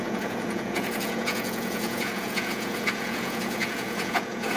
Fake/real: fake